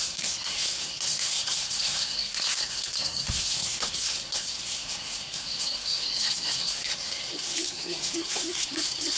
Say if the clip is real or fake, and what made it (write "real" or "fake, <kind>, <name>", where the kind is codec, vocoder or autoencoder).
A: fake, codec, SNAC